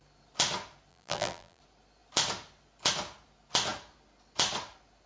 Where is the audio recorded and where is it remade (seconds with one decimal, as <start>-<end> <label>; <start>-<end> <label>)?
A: 0.0-0.9 recorded; 0.9-1.6 remade; 1.6-5.1 recorded